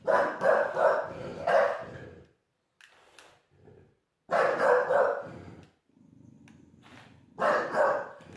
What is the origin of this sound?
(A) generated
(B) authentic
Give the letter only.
B